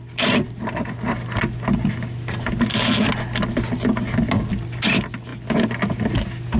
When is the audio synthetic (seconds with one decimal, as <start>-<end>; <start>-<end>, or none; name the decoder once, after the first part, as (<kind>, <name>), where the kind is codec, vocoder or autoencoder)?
none